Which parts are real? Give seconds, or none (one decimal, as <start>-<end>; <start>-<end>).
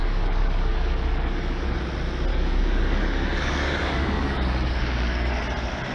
1.8-2.3; 5.4-5.9